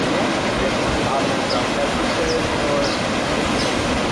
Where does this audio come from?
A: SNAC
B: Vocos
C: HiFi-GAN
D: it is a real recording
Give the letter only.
D